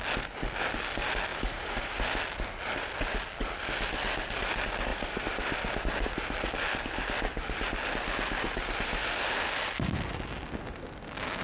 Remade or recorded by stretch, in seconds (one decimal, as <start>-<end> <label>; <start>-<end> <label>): 0.0-1.3 recorded; 1.3-2.0 remade; 2.0-4.9 recorded; 4.9-5.5 remade; 5.5-11.4 recorded